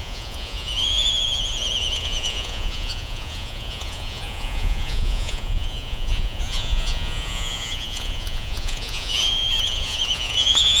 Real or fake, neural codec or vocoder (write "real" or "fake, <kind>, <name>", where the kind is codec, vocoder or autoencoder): fake, vocoder, Vocos